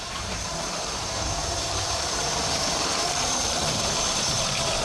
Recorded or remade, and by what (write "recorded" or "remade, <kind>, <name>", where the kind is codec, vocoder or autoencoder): remade, vocoder, BigVGAN v2